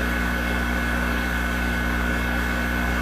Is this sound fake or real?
fake